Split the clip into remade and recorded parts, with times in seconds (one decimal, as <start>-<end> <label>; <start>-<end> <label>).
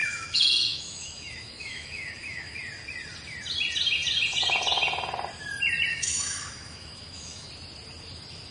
0.0-2.6 remade; 2.6-5.9 recorded; 5.9-7.5 remade; 7.5-8.5 recorded